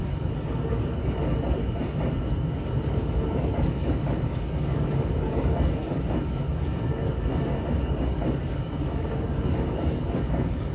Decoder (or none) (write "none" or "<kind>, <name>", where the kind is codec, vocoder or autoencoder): codec, DAC